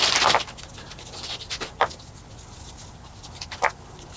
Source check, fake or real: real